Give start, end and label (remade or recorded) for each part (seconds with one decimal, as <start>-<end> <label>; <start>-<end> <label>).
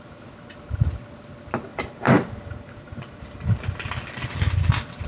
0.0-1.7 recorded; 1.7-3.9 remade; 3.9-5.1 recorded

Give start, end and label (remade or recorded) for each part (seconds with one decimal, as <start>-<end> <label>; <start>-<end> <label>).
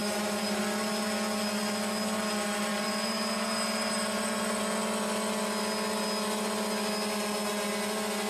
0.0-0.6 remade; 0.6-2.7 recorded; 2.7-4.6 remade; 4.6-8.3 recorded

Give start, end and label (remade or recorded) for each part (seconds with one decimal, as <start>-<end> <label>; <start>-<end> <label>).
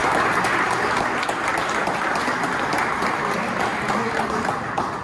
0.0-5.0 recorded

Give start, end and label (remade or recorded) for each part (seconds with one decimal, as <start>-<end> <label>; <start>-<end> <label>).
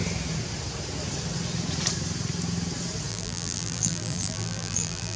0.0-3.1 recorded; 3.1-5.2 remade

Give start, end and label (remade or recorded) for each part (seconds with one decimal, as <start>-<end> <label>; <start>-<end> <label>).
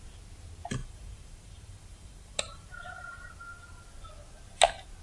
0.0-0.8 recorded; 0.8-3.2 remade; 3.2-5.0 recorded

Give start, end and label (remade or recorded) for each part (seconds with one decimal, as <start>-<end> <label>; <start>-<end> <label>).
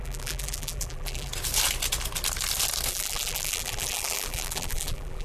0.0-1.3 remade; 1.3-2.9 recorded; 2.9-5.2 remade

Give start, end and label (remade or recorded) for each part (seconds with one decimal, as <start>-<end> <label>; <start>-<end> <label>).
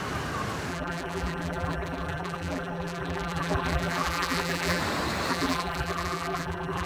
0.0-0.7 recorded; 0.7-4.8 remade; 4.8-5.3 recorded; 5.3-6.9 remade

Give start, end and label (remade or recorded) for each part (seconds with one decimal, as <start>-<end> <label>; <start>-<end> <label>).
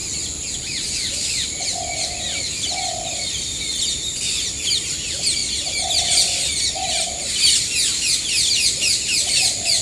0.0-9.8 recorded